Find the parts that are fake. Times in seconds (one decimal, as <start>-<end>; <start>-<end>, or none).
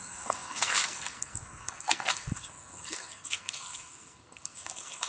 0.0-5.1